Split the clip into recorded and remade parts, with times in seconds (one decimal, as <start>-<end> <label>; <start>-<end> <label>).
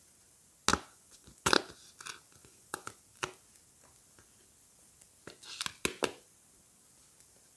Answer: 0.0-0.7 recorded; 0.7-1.6 remade; 1.6-2.4 recorded; 2.4-3.0 remade; 3.0-7.6 recorded